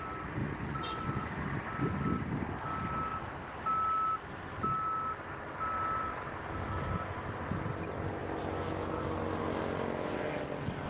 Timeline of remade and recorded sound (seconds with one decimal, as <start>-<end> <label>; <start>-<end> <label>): 0.0-0.4 recorded; 0.4-1.3 remade; 1.3-10.9 recorded